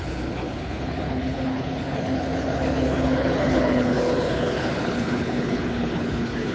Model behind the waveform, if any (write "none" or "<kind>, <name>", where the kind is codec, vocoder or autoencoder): codec, HILCodec